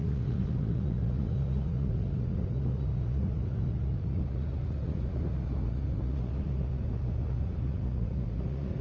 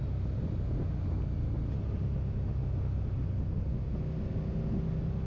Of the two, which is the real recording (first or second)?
second